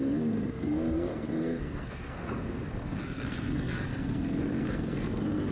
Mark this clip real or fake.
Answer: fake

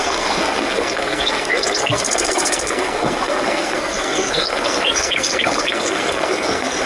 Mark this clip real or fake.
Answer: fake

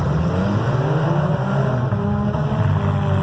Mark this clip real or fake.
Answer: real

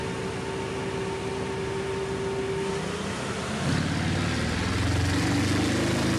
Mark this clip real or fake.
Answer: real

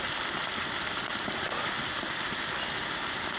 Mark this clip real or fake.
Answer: real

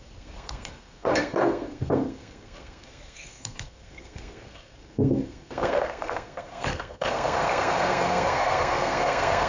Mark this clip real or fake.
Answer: fake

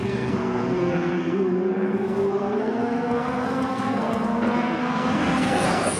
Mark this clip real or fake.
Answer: fake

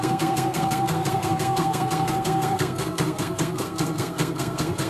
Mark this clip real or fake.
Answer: fake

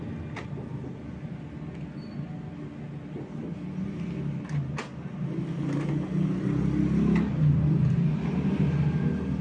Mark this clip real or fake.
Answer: real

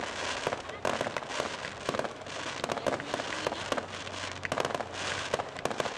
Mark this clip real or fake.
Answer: real